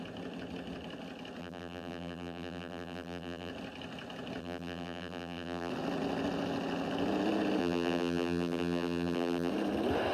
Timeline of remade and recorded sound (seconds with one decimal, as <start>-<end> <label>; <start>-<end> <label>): 0.0-1.4 recorded; 1.4-3.5 remade; 3.5-4.4 recorded; 4.4-5.7 remade; 5.7-7.6 recorded; 7.6-9.5 remade; 9.5-10.1 recorded